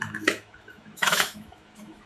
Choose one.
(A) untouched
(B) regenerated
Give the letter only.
B